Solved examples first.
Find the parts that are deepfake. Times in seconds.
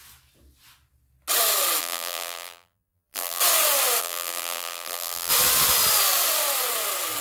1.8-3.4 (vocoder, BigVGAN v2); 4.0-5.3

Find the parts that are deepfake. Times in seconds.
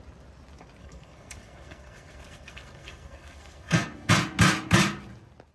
0.8-4.1 (codec, SNAC)